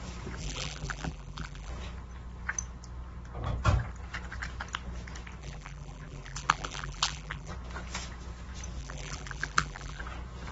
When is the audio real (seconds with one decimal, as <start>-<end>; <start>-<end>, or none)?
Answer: 0.0-0.4; 1.7-5.4; 7.5-8.8; 10.0-10.5